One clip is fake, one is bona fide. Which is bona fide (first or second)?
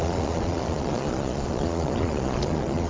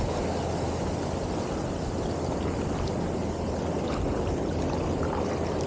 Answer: second